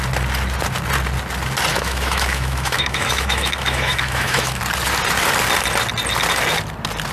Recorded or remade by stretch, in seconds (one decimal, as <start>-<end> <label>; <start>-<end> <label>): 0.0-1.7 recorded; 1.7-4.6 remade; 4.6-7.1 recorded